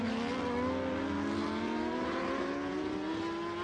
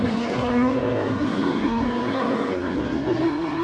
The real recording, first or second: first